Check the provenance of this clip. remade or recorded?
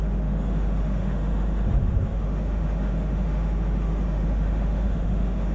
remade